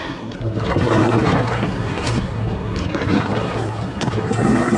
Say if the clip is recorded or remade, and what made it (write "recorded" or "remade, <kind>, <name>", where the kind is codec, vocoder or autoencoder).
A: remade, codec, SNAC